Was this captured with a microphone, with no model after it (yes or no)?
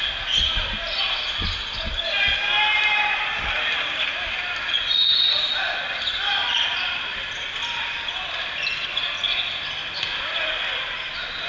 yes